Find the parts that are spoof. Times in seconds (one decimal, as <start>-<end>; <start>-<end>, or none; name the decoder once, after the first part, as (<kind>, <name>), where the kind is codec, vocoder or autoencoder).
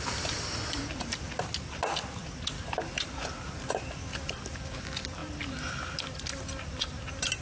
none